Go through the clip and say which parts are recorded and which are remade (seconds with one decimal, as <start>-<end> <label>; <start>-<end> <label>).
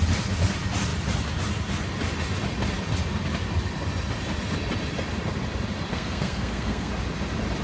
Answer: 0.0-5.9 recorded; 5.9-6.9 remade; 6.9-7.6 recorded